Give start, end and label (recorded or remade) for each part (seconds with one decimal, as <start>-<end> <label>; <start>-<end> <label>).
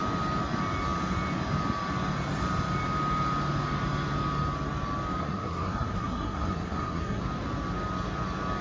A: 0.0-5.2 recorded; 5.2-7.2 remade; 7.2-8.6 recorded